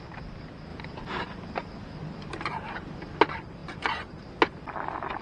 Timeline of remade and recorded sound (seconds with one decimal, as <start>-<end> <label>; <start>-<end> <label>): 0.0-5.2 recorded